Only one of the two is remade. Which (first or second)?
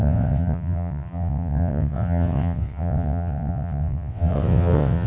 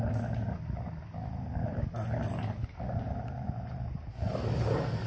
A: first